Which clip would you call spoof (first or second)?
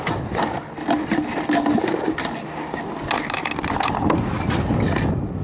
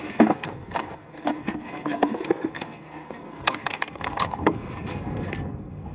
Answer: second